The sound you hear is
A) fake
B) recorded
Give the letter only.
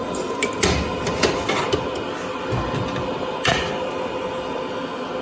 B